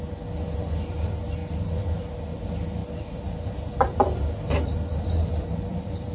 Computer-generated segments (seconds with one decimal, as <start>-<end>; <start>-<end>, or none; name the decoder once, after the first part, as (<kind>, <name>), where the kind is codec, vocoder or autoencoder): 2.8-6.1 (vocoder, BigVGAN v2)